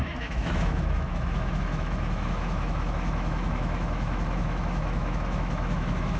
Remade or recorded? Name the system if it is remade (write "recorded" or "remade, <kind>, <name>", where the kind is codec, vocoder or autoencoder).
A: remade, autoencoder, DAC-VAE